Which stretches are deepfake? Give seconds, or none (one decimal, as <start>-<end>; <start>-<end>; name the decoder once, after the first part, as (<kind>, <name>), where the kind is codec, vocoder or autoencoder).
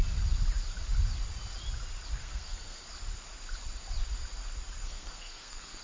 2.2-2.8 (codec, SNAC); 4.8-5.8